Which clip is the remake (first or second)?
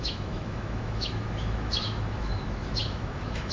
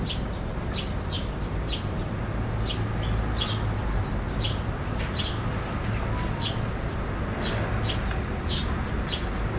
first